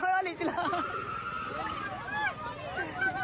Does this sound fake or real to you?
real